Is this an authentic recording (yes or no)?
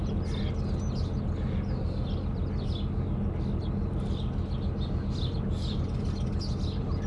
yes